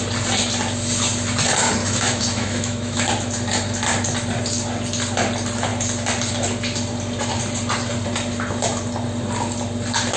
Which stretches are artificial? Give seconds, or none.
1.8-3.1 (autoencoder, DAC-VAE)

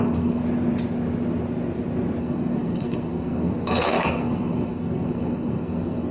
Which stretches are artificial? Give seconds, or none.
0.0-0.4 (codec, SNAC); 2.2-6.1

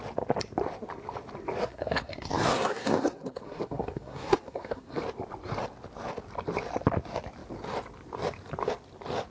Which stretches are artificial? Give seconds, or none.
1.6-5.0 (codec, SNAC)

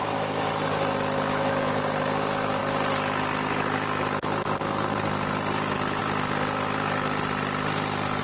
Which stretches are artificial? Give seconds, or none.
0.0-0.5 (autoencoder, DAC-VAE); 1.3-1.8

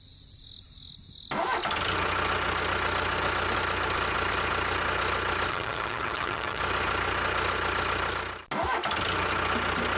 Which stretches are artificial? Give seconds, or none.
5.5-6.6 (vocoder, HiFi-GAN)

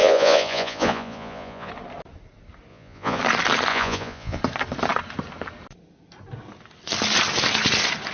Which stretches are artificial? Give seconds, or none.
0.0-1.7 (vocoder, Vocos); 2.7-3.2; 3.7-4.4

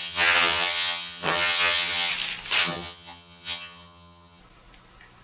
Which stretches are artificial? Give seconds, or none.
0.0-2.1 (vocoder, HiFi-GAN); 2.6-4.4

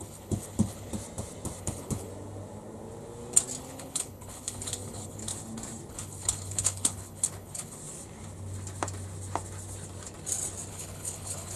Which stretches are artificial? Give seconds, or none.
0.0-0.9 (codec, HILCodec); 1.6-2.1; 3.6-5.2; 5.9-7.8; 10.7-11.6